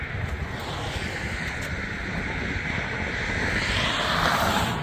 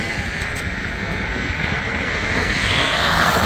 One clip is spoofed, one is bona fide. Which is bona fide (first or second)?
first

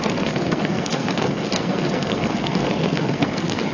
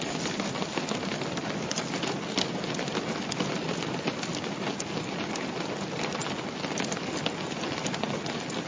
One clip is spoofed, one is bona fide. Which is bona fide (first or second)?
second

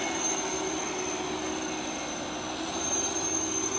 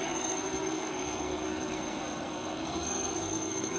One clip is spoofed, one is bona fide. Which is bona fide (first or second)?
first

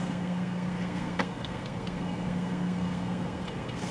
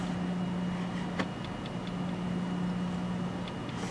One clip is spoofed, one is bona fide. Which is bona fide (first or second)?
second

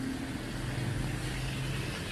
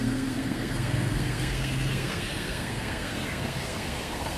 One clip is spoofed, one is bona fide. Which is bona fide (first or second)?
first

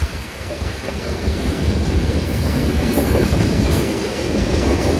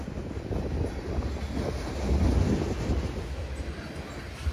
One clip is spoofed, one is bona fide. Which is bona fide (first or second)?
second